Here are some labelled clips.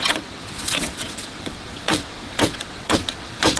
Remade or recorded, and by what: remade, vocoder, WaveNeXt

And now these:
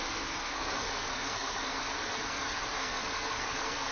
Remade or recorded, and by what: remade, codec, SNAC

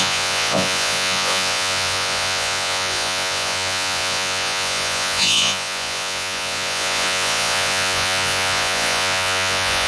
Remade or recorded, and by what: remade, vocoder, Vocos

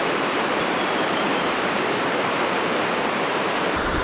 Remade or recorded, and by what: remade, vocoder, BigVGAN v2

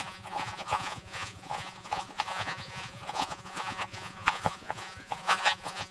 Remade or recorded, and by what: remade, vocoder, Vocos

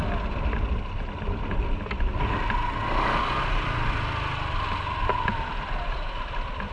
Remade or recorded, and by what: recorded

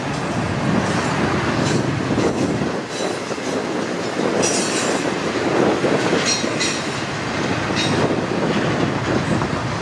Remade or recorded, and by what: recorded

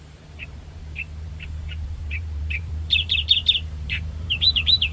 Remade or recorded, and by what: remade, vocoder, BigVGAN v2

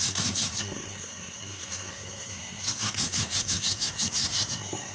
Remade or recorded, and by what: remade, codec, SNAC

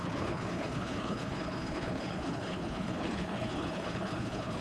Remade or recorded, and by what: remade, codec, HILCodec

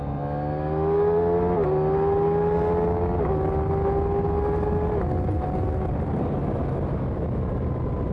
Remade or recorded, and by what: recorded